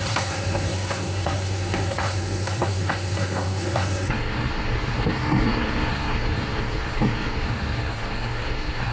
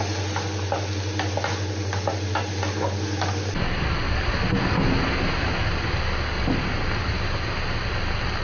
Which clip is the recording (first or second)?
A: second